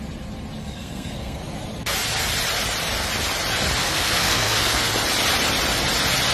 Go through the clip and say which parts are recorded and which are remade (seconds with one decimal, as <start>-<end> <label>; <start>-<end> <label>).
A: 0.0-0.6 recorded; 0.6-1.4 remade; 1.4-3.8 recorded; 3.8-4.9 remade; 4.9-6.3 recorded